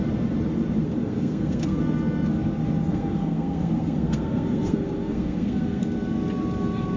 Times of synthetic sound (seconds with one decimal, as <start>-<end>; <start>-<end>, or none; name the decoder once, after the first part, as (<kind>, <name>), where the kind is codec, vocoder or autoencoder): 0.8-1.8 (codec, SNAC); 2.9-5.8